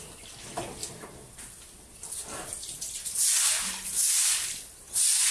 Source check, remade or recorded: recorded